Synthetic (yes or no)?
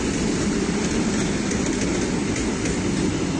no